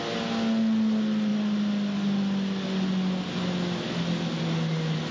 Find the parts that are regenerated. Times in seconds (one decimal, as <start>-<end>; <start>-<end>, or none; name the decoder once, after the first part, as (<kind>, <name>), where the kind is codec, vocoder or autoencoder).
none